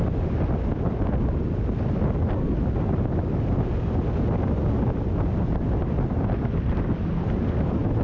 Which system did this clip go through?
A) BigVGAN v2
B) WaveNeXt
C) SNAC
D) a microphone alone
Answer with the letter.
D